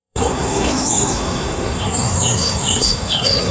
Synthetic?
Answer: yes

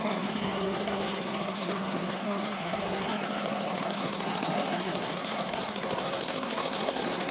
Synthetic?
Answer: yes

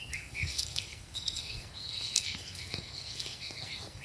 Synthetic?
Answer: yes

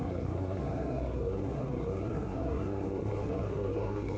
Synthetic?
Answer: yes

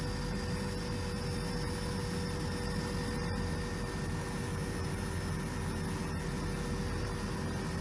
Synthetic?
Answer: no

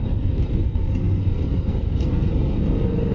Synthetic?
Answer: yes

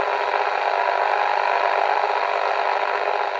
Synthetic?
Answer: no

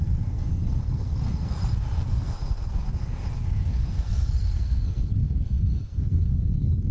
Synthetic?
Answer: yes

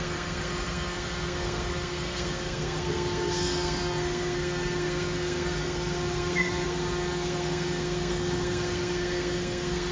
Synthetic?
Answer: yes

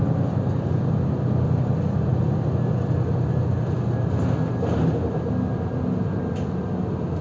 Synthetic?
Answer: no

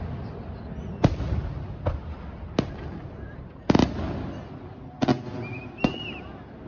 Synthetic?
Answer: no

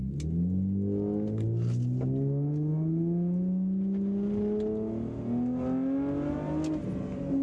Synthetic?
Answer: no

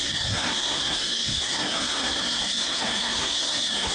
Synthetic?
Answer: yes